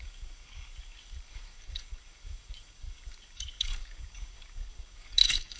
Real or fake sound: fake